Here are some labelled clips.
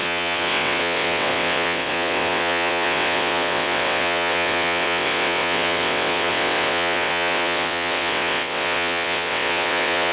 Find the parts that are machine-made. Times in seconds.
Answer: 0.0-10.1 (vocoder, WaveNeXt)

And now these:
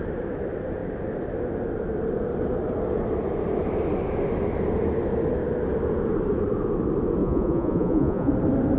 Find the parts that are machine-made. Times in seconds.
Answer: 7.2-8.3 (vocoder, Vocos)

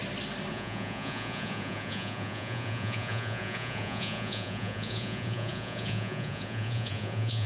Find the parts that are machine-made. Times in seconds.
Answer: 0.5-7.5 (vocoder, Vocos)

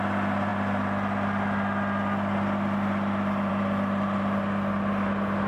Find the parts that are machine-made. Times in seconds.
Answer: none

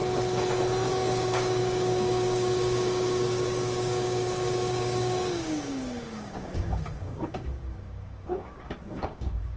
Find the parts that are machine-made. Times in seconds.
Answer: 0.9-9.6 (codec, DAC)

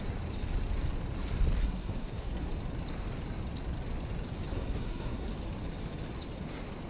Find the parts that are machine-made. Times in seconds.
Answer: 1.6-2.5 (codec, SNAC); 4.5-5.3

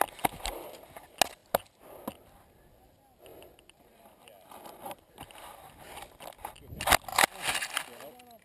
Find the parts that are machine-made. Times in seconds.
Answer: none

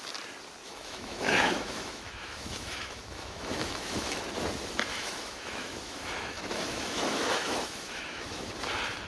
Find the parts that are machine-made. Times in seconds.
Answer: 0.6-4.2 (autoencoder, DAC-VAE); 4.9-8.6